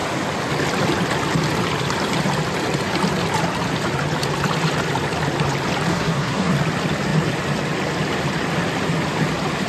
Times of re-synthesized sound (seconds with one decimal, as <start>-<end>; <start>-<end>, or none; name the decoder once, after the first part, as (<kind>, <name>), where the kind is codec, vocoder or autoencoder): 5.9-6.5 (codec, SNAC)